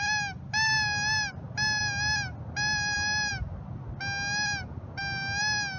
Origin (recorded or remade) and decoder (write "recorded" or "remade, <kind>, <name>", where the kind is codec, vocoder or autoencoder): recorded